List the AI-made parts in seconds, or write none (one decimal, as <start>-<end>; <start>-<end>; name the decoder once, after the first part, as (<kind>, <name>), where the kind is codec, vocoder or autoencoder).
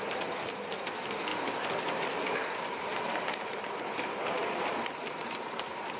none